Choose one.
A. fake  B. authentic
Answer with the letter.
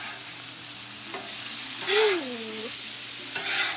B